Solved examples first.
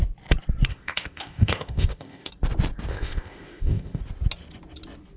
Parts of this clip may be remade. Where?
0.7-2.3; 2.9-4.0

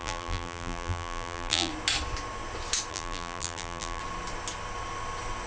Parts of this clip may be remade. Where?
0.0-1.7; 2.9-4.0

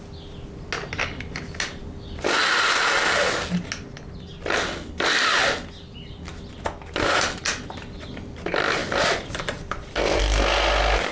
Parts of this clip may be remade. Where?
8.8-10.2

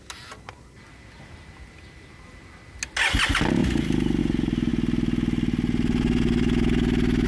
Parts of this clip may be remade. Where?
none

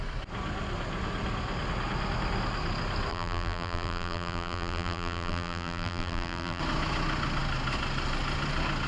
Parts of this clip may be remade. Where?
3.1-6.6

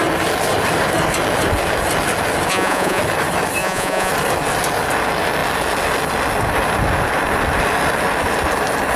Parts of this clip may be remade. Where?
2.5-3.0; 3.6-4.1

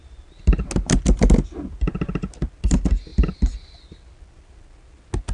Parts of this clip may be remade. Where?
none

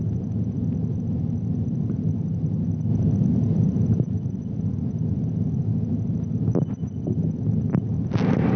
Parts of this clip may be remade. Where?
none